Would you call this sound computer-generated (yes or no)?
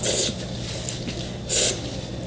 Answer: no